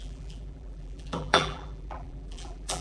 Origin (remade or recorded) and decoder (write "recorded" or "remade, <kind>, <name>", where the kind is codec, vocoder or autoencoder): remade, vocoder, BigVGAN v2